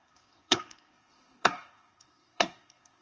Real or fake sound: fake